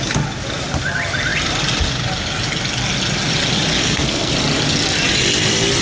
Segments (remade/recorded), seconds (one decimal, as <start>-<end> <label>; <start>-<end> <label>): 0.0-3.8 recorded; 3.8-4.3 remade; 4.3-5.8 recorded